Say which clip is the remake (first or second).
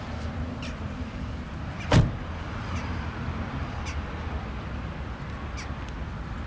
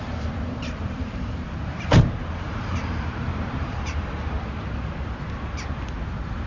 second